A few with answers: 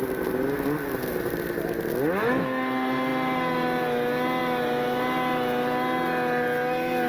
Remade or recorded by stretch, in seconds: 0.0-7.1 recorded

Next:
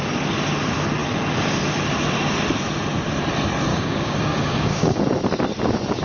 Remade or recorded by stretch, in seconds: 0.0-3.7 recorded; 3.7-5.0 remade; 5.0-6.0 recorded

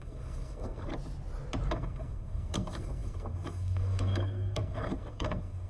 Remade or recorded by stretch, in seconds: 0.0-0.9 remade; 0.9-1.7 recorded; 1.7-5.7 remade

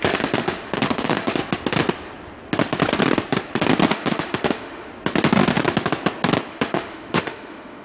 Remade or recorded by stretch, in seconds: 0.0-1.4 remade; 1.4-3.9 recorded; 3.9-4.9 remade; 4.9-6.5 recorded; 6.5-7.8 remade

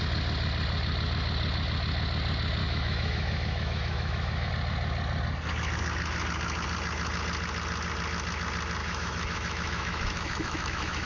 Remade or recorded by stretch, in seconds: 0.0-2.6 recorded; 2.6-4.5 remade; 4.5-8.8 recorded; 8.8-11.1 remade

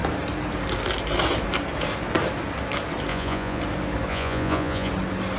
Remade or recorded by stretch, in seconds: 0.0-3.1 recorded; 3.1-3.6 remade; 3.6-4.1 recorded; 4.1-4.9 remade; 4.9-5.4 recorded